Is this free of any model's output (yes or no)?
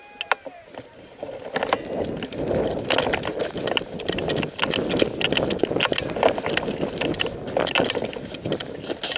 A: yes